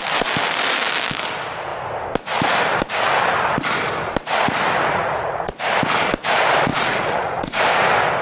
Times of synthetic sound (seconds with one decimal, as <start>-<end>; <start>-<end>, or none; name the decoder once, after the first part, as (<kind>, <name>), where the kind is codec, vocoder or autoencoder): 4.8-5.5 (vocoder, Vocos); 6.7-7.6